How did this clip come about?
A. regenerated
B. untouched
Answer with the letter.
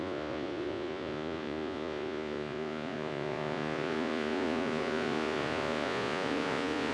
A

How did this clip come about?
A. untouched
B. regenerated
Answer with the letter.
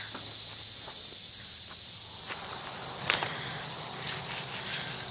A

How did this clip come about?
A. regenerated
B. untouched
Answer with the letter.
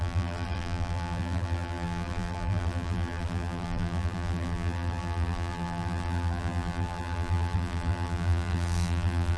A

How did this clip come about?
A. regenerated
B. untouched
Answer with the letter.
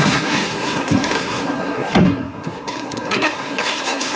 A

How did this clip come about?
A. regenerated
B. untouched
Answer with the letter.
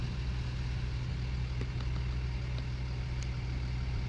B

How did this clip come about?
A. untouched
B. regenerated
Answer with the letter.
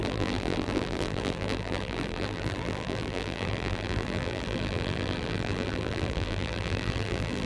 B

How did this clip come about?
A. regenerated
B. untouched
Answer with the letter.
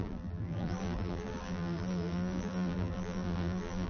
A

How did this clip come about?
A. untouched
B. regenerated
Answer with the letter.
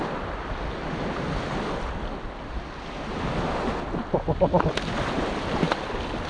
A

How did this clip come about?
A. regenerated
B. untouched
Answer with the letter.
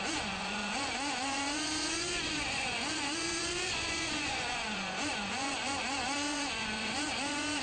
A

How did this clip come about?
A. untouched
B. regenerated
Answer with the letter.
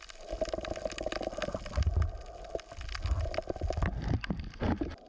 A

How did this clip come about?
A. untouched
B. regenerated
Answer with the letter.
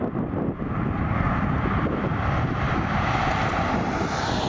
A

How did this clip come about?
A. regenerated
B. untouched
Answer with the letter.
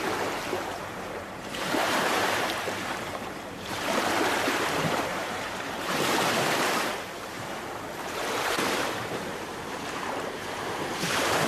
A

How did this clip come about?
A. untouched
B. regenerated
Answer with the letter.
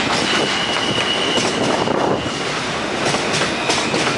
A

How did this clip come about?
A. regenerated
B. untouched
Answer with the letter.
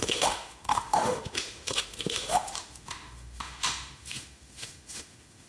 A